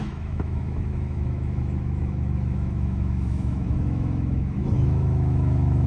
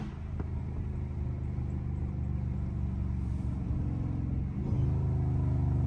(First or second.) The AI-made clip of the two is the first